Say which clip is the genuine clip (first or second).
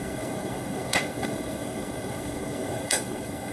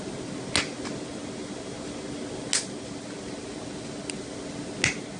second